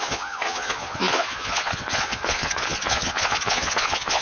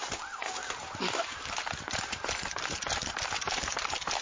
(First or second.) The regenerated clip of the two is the first